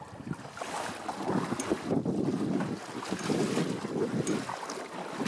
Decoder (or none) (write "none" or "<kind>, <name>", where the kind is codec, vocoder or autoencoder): none